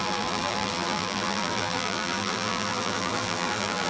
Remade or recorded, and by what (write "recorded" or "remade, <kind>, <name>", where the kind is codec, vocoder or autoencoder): remade, vocoder, BigVGAN v2